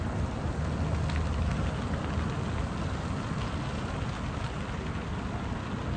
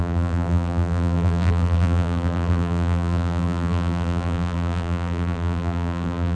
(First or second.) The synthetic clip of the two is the second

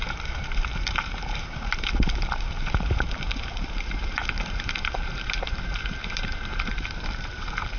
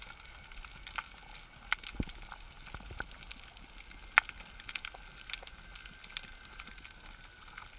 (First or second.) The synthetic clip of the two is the first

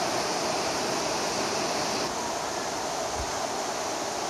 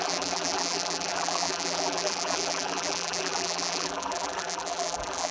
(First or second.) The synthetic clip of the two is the second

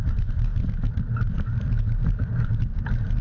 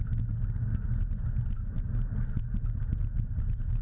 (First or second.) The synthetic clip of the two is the first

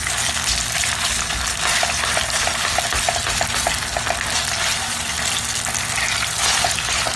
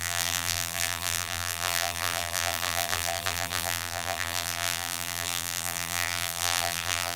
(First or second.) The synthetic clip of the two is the second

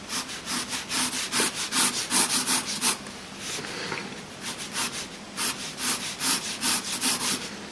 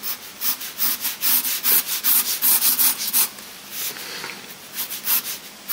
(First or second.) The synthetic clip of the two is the first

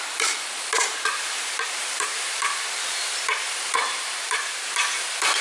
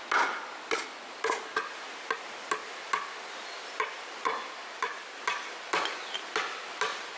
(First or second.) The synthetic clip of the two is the first